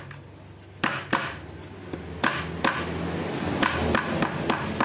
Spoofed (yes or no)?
no